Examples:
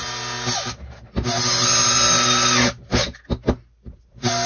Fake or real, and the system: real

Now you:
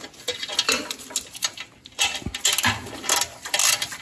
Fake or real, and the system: real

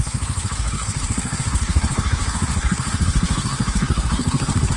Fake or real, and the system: fake, codec, SNAC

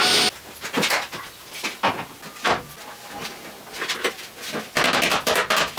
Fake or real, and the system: real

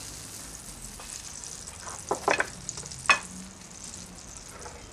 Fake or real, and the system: real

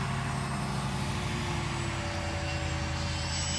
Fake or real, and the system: real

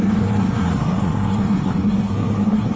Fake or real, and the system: fake, codec, SNAC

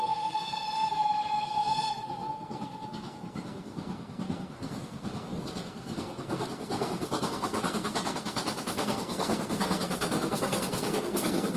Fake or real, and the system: fake, codec, SNAC